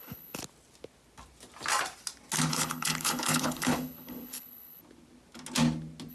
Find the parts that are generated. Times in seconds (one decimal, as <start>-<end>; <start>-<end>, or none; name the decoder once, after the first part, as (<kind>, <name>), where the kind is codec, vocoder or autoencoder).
0.0-0.4 (codec, HILCodec); 2.5-4.8